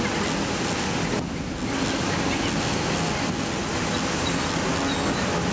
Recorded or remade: recorded